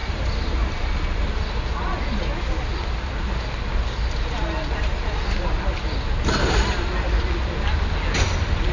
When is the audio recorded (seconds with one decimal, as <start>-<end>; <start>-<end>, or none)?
1.2-8.7